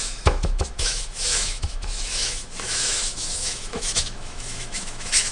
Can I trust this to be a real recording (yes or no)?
no